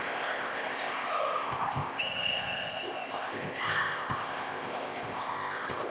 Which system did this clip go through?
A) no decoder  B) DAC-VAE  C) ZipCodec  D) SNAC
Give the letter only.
C